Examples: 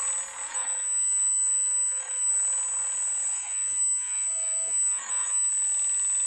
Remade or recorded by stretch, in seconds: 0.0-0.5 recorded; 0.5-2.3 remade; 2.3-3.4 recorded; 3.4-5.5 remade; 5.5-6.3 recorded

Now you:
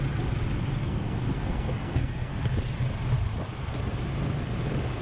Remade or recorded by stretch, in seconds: 0.0-0.8 recorded; 0.8-2.3 remade; 2.3-5.0 recorded

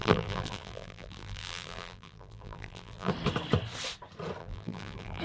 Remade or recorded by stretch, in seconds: 0.0-3.1 remade; 3.1-4.4 recorded; 4.4-5.2 remade

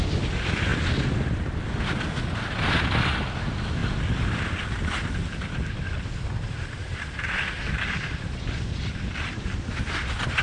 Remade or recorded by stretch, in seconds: 0.0-10.4 recorded

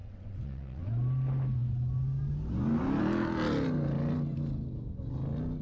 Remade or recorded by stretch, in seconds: 0.0-0.9 remade; 0.9-5.6 recorded